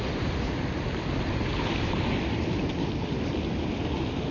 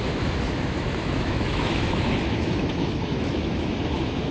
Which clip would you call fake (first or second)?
second